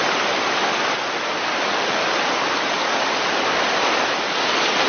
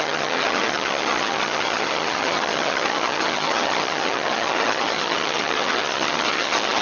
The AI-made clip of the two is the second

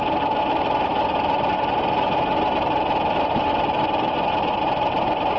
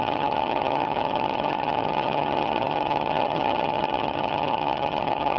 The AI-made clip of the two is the second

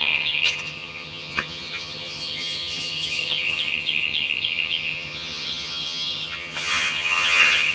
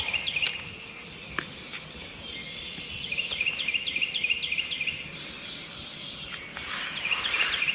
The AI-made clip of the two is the first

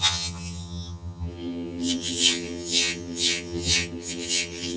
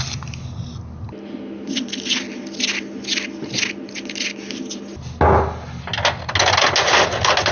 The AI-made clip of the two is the first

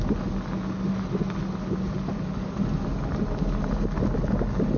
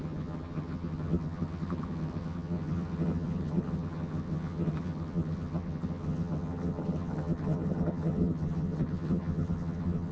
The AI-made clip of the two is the second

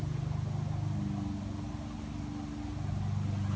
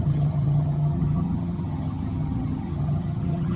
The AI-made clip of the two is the second